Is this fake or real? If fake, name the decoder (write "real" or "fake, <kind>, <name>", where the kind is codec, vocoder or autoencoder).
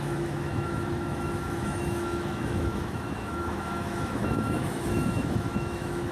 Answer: fake, autoencoder, DAC-VAE